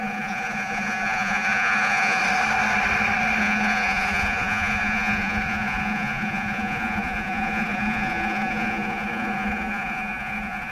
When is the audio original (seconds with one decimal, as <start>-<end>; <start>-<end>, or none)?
2.2-3.4